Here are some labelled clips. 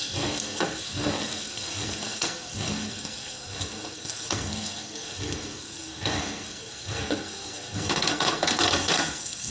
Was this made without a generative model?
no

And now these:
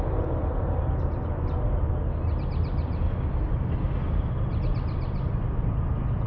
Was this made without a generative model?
yes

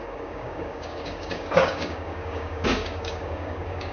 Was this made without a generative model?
no